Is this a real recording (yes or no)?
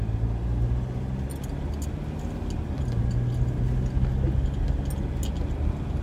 yes